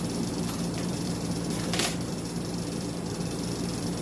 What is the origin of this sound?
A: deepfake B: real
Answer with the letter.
A